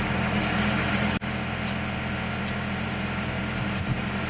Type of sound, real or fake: real